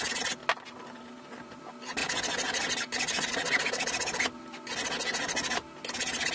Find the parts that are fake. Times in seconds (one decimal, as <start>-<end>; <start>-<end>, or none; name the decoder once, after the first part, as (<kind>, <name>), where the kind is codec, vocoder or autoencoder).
none